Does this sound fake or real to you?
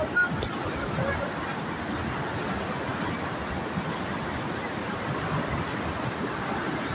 real